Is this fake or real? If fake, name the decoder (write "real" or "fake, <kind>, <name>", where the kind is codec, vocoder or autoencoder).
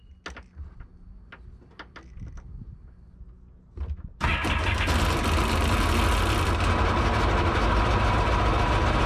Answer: real